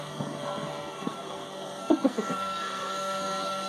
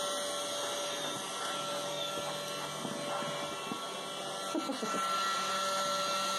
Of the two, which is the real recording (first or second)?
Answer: second